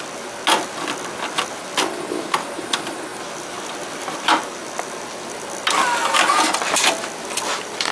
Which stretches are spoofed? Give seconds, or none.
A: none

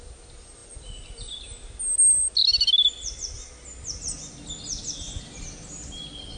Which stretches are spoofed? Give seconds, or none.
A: none

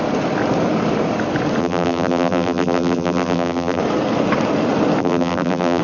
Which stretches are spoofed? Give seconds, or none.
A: 1.6-3.8 (vocoder, BigVGAN v2); 5.0-5.8

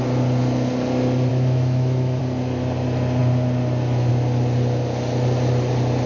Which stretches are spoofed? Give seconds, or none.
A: 1.3-2.2 (autoencoder, DAC-VAE)

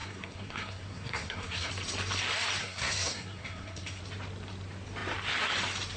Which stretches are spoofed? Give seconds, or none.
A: 0.0-1.7 (codec, SNAC); 2.6-4.0

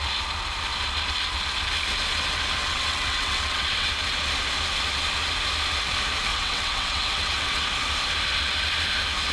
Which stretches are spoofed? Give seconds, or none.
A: 2.6-3.9 (vocoder, WaveNeXt); 6.3-7.7